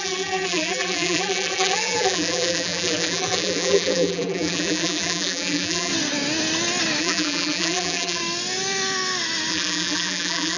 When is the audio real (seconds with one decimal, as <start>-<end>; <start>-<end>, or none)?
5.9-7.0; 8.2-9.5